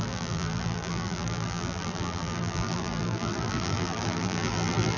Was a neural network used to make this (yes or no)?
yes